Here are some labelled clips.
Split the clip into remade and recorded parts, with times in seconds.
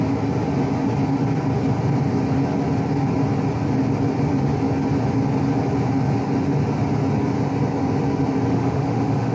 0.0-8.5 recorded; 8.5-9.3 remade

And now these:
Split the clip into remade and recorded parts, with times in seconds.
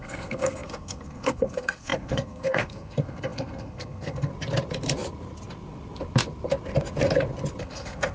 0.0-4.3 remade; 4.3-7.6 recorded; 7.6-8.1 remade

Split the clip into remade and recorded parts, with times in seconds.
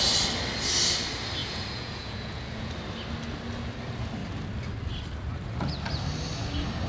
0.0-1.4 recorded; 1.4-2.7 remade; 2.7-6.9 recorded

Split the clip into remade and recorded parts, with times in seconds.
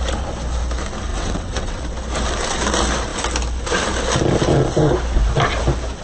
0.0-1.1 recorded; 1.1-1.8 remade; 1.8-6.0 recorded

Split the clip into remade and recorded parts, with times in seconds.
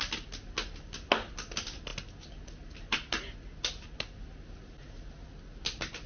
0.0-6.1 recorded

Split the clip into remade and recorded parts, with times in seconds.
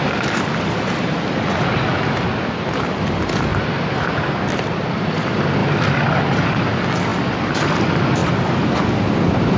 0.0-9.6 recorded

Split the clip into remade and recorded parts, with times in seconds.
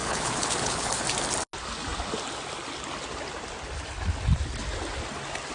0.0-1.0 remade; 1.0-5.5 recorded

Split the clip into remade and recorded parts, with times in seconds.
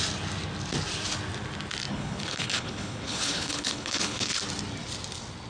0.0-1.9 recorded; 1.9-4.4 remade; 4.4-5.5 recorded